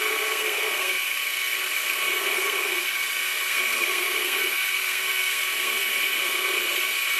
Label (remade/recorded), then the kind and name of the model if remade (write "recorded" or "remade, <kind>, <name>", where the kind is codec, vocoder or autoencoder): remade, codec, SNAC